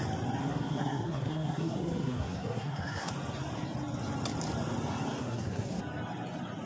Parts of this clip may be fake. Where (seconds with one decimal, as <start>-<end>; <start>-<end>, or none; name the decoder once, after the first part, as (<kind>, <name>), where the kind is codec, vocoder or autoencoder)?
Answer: 0.4-3.1 (codec, SNAC); 5.2-5.8